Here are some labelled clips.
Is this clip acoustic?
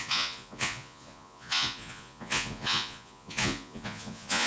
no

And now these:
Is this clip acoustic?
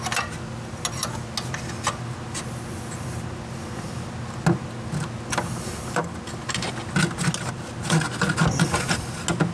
yes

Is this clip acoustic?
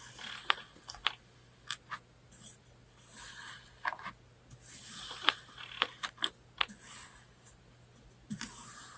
yes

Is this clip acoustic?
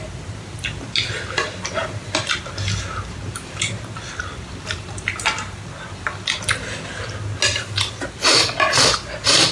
yes